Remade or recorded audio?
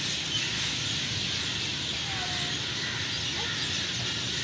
recorded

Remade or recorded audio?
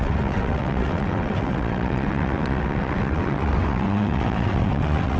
remade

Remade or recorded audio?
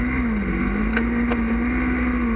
recorded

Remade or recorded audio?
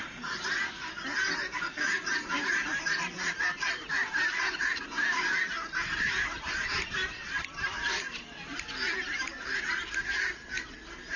recorded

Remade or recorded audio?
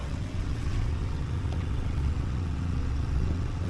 remade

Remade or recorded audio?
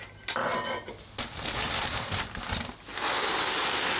recorded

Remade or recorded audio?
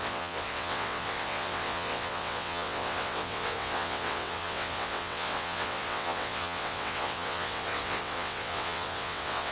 remade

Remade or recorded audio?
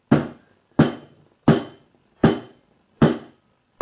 recorded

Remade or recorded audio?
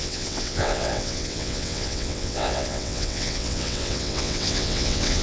remade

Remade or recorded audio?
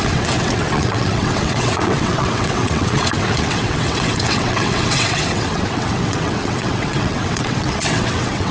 remade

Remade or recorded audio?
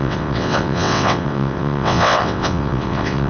remade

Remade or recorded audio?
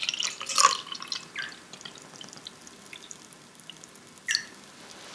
recorded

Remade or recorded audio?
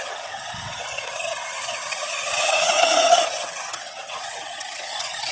remade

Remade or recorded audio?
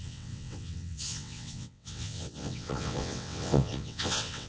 remade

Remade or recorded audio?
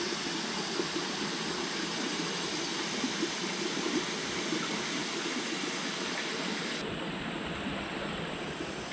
recorded